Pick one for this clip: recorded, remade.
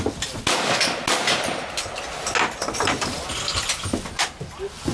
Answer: recorded